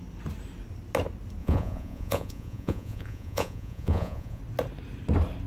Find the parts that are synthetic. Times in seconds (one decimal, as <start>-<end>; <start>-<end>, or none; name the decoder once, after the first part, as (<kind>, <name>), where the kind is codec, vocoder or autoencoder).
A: 1.4-4.4 (vocoder, Vocos)